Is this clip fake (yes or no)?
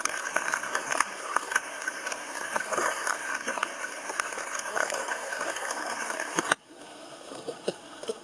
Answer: yes